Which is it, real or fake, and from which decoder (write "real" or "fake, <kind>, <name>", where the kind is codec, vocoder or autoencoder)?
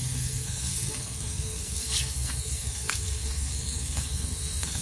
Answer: fake, codec, SNAC